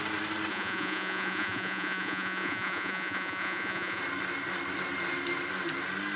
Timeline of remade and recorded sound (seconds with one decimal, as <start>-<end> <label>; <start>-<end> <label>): 0.0-0.5 recorded; 0.5-4.0 remade; 4.0-6.2 recorded